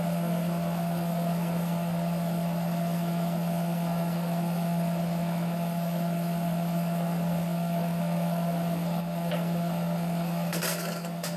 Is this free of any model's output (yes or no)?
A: no